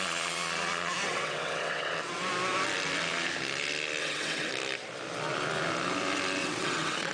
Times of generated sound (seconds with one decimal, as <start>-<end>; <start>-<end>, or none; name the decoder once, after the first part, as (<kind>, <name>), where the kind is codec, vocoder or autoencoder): 1.0-2.3 (vocoder, WaveNeXt); 4.0-4.5; 6.4-7.1